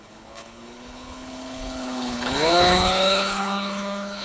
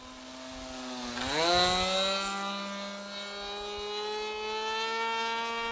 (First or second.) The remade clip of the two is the first